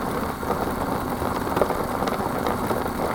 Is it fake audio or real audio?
real